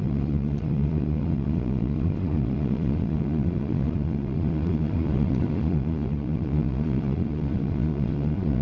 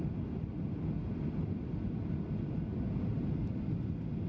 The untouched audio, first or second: second